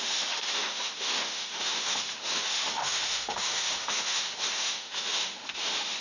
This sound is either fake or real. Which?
fake